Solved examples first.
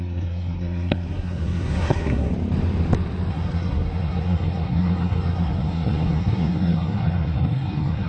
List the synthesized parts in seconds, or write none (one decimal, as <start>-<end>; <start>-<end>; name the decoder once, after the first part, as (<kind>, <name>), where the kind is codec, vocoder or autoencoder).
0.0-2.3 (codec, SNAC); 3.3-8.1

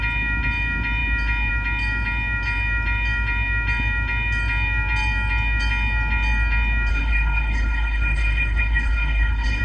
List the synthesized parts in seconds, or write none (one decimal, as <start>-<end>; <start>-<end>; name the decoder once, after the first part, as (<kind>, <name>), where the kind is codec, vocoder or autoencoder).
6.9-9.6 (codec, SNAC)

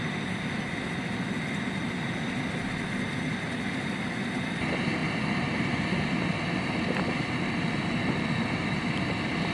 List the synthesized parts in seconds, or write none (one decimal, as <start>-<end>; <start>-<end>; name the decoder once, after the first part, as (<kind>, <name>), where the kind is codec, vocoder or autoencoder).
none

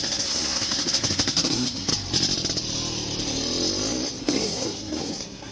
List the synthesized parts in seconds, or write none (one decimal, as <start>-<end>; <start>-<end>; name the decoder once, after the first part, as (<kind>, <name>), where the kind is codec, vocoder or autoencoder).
0.0-1.9 (codec, SNAC); 4.2-5.5

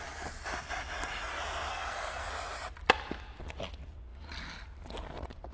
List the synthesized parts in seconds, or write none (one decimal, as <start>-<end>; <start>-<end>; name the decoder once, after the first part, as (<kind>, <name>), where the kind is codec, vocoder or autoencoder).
1.7-2.3 (codec, SNAC)

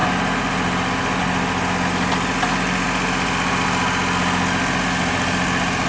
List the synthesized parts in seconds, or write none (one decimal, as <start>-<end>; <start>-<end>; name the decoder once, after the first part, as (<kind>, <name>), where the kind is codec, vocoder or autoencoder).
none